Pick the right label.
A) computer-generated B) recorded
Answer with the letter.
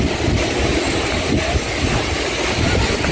B